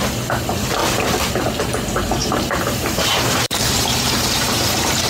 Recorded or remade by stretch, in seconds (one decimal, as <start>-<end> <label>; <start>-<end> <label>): 0.0-0.8 recorded; 0.8-1.4 remade; 1.4-2.2 recorded; 2.2-5.1 remade